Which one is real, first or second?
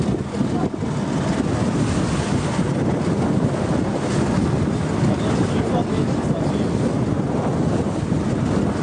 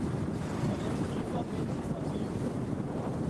first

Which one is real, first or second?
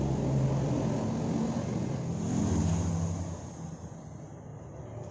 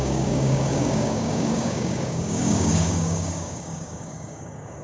first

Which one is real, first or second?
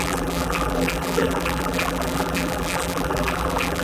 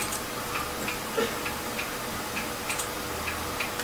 second